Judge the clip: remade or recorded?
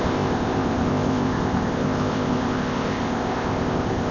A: remade